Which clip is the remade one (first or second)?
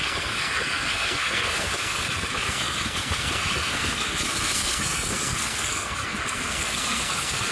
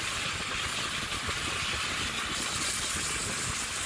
first